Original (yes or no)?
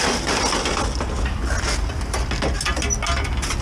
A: yes